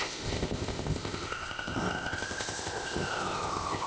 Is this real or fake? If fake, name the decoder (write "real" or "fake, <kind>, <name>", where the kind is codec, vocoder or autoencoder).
fake, codec, ZipCodec